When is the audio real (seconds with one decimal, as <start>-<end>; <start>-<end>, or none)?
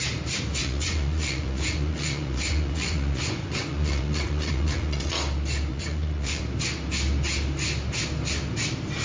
0.0-0.6; 5.1-5.7; 6.4-9.0